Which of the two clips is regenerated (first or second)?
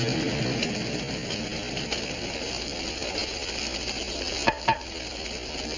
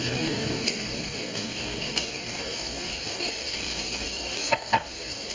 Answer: second